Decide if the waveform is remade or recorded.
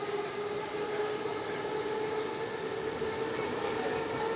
recorded